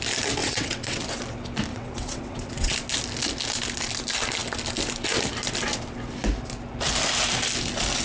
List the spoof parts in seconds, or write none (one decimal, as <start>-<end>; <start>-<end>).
0.4-1.0; 1.7-2.7